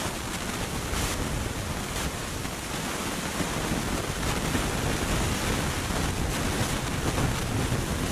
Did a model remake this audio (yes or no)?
no